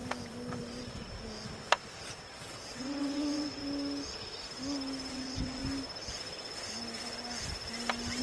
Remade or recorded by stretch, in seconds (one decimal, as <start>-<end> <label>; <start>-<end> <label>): 0.0-2.2 recorded; 2.2-3.6 remade; 3.6-5.1 recorded; 5.1-5.6 remade; 5.6-8.2 recorded